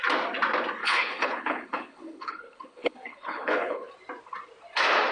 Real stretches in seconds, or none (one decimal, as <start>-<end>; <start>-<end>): 0.0-0.8; 3.9-5.1